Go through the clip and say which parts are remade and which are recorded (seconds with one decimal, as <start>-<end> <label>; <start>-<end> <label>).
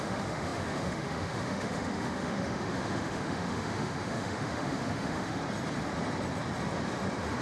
0.0-5.4 remade; 5.4-7.4 recorded